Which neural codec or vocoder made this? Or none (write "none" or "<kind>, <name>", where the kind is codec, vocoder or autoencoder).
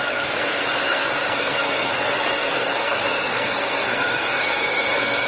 codec, SNAC